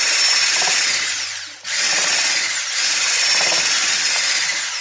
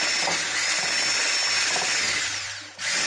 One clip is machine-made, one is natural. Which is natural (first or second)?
second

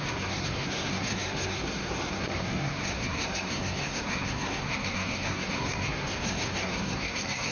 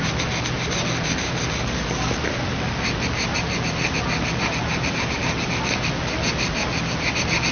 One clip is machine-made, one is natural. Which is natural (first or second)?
second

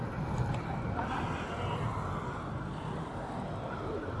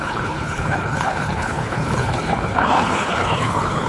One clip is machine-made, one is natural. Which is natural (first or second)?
first